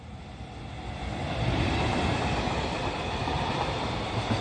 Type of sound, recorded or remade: recorded